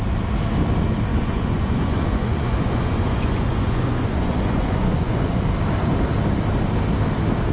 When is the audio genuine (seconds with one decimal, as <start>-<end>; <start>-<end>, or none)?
0.0-1.1; 5.4-7.5